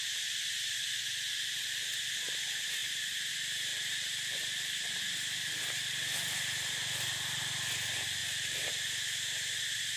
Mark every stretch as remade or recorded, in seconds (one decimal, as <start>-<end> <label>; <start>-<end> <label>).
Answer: 0.0-2.8 recorded; 2.8-3.3 remade; 3.3-3.7 recorded; 3.7-5.0 remade; 5.0-8.2 recorded; 8.2-8.7 remade; 8.7-10.0 recorded